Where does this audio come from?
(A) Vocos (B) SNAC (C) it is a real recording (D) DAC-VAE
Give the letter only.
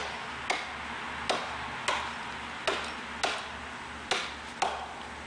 C